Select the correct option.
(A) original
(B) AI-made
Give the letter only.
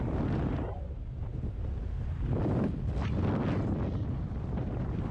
A